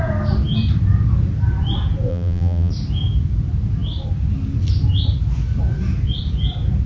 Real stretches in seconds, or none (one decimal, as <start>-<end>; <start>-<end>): 0.0-2.1; 2.7-6.9